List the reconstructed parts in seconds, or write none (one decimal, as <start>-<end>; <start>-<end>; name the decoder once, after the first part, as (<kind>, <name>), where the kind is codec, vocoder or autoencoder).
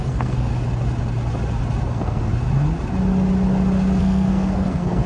0.0-0.5 (codec, SNAC); 1.9-2.3; 4.0-5.1